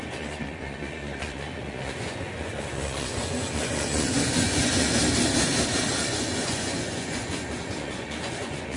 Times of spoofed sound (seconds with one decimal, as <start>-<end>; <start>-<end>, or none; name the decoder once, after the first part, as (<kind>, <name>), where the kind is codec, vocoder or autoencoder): 0.0-5.0 (vocoder, Vocos); 5.9-8.8